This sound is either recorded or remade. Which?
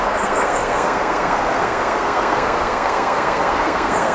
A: remade